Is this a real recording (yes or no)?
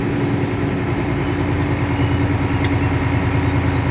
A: yes